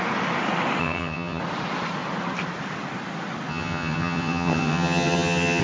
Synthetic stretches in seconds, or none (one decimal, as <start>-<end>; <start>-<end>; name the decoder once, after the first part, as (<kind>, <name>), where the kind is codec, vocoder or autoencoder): 0.8-1.4 (vocoder, HiFi-GAN); 3.5-5.6